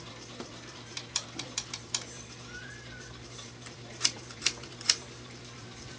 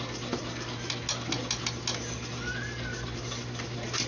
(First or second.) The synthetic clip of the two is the first